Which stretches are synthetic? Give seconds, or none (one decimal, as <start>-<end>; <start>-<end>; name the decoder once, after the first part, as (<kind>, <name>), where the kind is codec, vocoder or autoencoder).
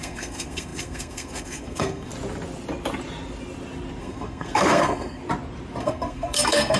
0.0-2.1 (codec, SNAC); 4.0-5.2; 5.8-6.8